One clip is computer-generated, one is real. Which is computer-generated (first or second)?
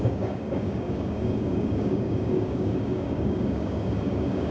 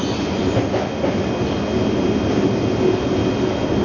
first